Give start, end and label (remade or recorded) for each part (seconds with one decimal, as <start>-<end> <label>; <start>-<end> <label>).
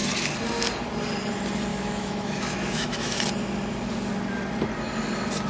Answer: 0.0-1.7 recorded; 1.7-3.2 remade; 3.2-5.5 recorded